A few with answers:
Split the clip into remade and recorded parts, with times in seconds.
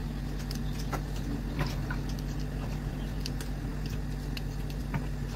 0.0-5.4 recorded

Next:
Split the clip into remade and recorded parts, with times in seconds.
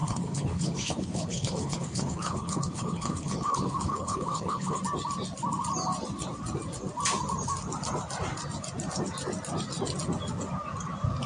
0.0-4.8 remade; 4.8-11.3 recorded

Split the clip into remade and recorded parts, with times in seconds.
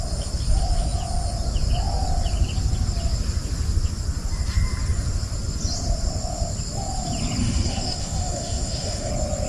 0.0-7.4 recorded; 7.4-9.1 remade; 9.1-9.5 recorded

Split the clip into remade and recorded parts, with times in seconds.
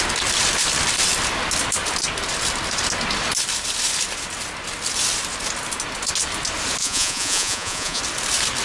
0.0-6.8 recorded; 6.8-8.0 remade; 8.0-8.6 recorded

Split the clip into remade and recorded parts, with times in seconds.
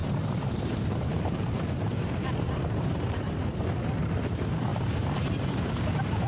0.0-6.3 remade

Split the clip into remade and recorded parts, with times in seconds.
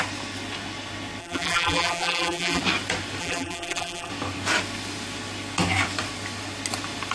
0.0-1.2 recorded; 1.2-2.6 remade; 2.6-3.2 recorded; 3.2-4.1 remade; 4.1-7.1 recorded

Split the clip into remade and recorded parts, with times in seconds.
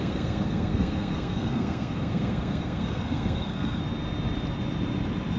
0.0-3.8 remade; 3.8-5.4 recorded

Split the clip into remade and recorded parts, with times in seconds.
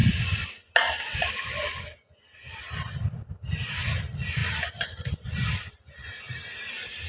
0.0-7.1 recorded